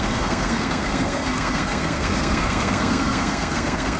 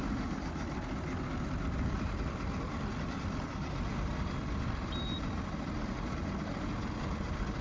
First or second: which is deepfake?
first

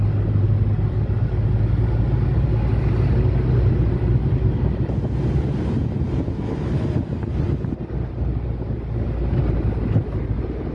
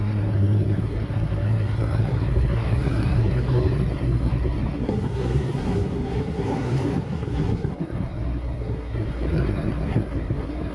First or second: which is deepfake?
second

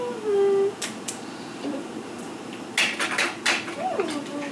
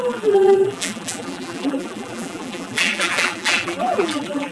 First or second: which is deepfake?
second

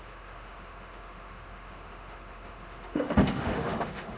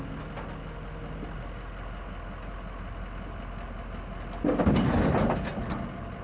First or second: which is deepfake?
first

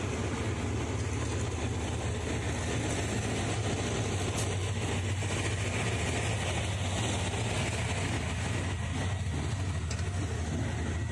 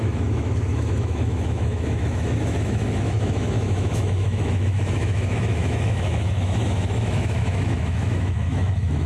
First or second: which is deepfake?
second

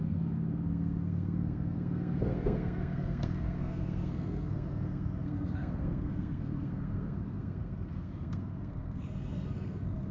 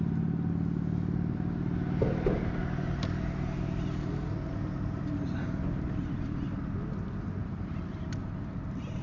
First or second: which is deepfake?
first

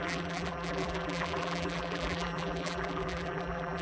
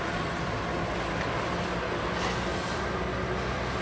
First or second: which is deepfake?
first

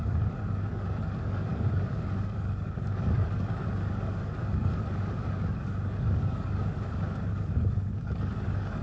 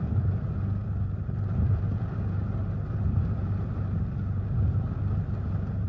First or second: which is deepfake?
first